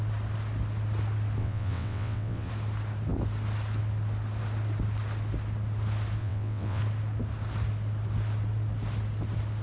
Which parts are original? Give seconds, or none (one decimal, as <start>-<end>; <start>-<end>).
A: 0.0-1.4; 2.5-6.2; 6.8-9.6